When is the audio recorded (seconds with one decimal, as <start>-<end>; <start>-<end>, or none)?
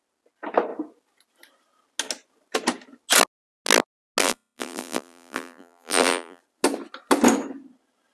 0.0-4.2; 6.4-8.1